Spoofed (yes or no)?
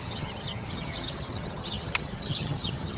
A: yes